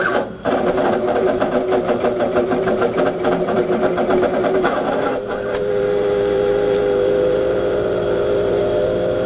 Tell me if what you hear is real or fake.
fake